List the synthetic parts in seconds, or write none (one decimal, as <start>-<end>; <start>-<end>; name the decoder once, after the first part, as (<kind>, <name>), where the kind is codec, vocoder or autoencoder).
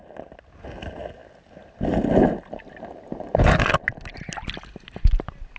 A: none